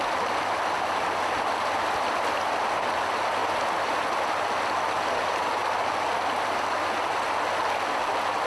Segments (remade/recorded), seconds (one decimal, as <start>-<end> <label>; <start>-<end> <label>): 0.0-8.5 recorded